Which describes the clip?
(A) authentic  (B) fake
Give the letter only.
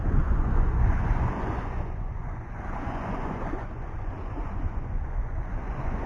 B